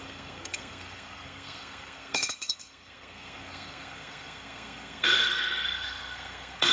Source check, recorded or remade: remade